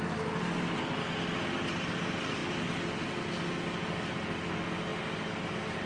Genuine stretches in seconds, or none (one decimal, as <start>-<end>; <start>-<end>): 0.0-5.9